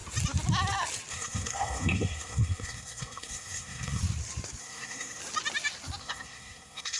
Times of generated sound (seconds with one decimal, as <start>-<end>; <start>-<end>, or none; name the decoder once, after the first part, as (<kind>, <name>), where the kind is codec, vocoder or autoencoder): 1.1-4.0 (codec, SNAC); 4.6-5.2; 6.0-7.0